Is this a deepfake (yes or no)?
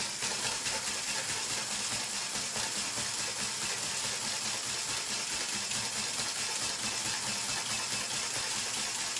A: no